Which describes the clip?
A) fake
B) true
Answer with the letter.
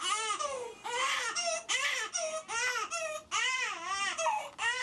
B